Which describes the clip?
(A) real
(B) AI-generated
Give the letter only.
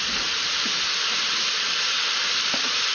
A